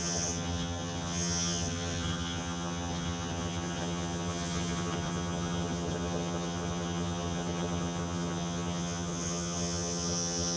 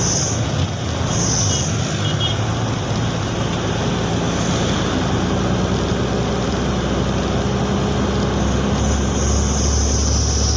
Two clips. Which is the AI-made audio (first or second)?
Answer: first